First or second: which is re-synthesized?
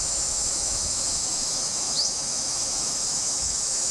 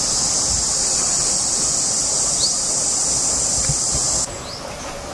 first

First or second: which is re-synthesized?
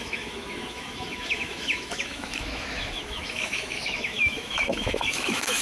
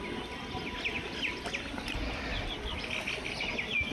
first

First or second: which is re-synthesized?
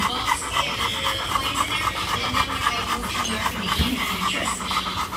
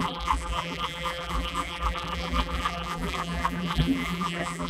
second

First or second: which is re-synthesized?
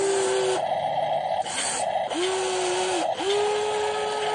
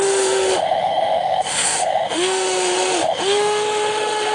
second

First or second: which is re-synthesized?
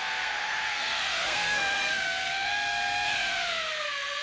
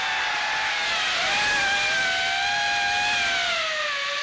first